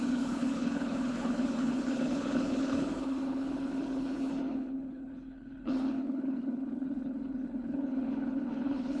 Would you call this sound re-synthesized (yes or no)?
yes